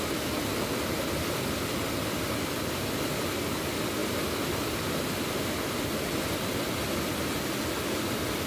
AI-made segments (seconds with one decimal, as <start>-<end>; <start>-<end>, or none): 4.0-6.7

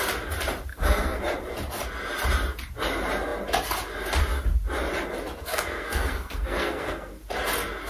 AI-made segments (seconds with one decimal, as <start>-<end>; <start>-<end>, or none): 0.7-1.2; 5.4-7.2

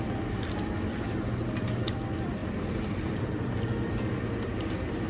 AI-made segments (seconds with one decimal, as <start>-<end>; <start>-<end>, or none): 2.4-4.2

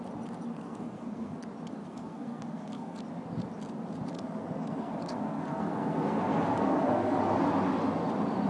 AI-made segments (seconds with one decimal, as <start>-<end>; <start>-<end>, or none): 0.5-1.4; 1.8-3.0; 4.1-7.2